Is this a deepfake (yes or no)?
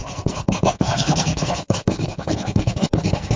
yes